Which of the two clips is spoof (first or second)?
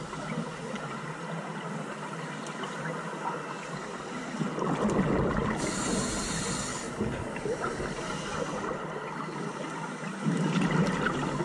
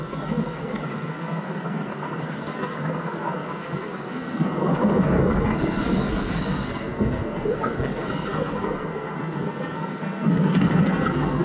second